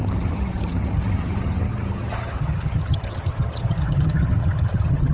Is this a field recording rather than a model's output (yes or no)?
no